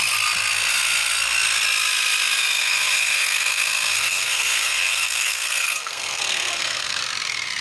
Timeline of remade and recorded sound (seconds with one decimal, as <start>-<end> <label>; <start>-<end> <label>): 0.0-2.6 recorded; 2.6-7.0 remade; 7.0-7.6 recorded